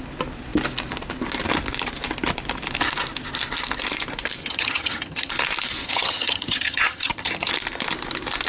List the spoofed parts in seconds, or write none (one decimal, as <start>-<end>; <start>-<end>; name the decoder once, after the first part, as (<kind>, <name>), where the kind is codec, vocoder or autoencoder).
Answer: 4.4-5.3 (vocoder, HiFi-GAN); 5.8-7.5